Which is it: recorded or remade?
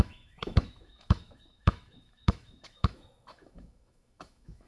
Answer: remade